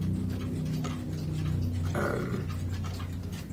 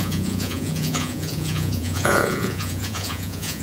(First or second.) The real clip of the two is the first